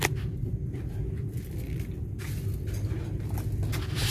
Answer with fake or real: real